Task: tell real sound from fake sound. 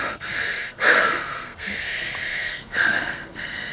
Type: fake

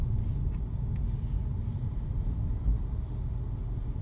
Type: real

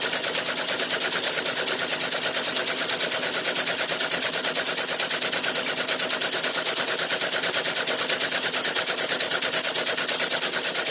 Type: real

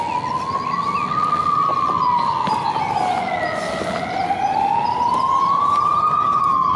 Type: real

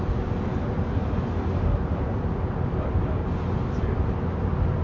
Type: real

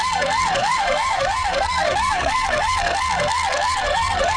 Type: fake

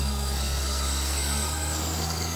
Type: fake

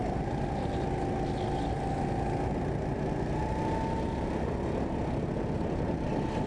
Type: real